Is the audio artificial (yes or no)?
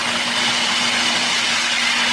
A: no